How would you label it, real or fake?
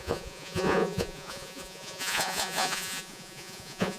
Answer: fake